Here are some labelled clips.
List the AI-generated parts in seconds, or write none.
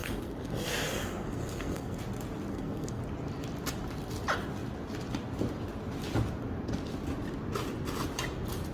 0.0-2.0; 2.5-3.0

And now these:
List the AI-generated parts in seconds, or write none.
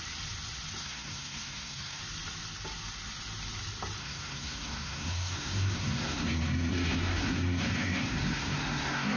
0.8-2.0; 4.0-9.2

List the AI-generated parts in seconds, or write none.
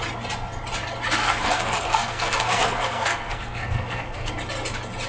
1.2-4.3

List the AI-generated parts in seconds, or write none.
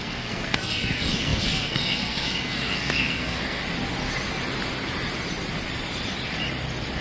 0.0-3.6